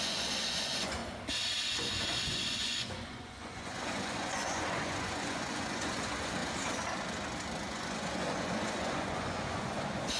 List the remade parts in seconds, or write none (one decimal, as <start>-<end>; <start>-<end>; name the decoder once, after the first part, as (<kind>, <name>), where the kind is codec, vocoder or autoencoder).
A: 0.0-1.0 (vocoder, Vocos); 1.6-6.4; 7.7-10.2